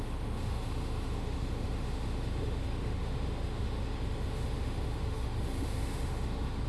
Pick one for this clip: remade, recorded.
remade